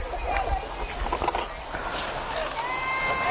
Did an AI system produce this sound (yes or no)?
no